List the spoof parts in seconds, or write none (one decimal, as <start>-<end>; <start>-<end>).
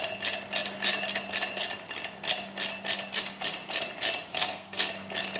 4.3-4.9